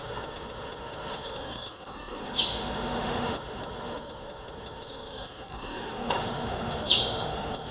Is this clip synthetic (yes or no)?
yes